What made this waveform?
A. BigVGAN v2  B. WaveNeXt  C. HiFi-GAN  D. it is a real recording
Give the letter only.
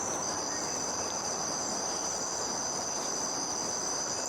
A